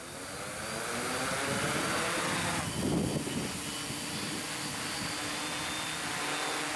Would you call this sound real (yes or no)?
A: yes